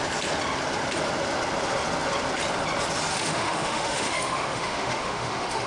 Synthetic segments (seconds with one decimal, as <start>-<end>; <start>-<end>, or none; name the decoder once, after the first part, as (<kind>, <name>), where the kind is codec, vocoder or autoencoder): 3.1-5.7 (autoencoder, DAC-VAE)